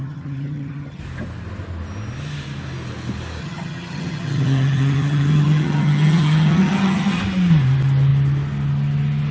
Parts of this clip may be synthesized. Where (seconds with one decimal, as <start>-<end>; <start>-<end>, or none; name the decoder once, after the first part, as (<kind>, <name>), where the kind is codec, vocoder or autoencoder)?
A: 0.0-1.0 (vocoder, HiFi-GAN); 3.4-7.2